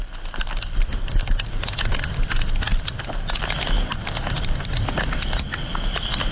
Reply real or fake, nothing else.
real